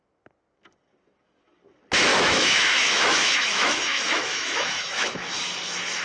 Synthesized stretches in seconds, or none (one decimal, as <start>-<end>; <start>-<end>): 2.1-5.4